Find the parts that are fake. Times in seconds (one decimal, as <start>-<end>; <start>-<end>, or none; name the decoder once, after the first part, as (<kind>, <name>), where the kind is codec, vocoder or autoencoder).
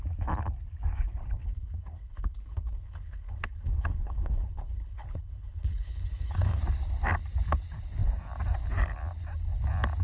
1.4-6.6 (codec, HILCodec)